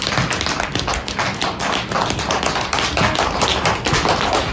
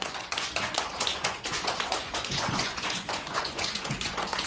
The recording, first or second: first